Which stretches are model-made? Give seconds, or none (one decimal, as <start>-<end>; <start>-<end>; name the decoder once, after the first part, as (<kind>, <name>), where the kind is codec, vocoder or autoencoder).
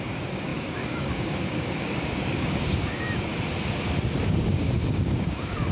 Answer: 0.0-3.3 (codec, DAC); 4.2-5.7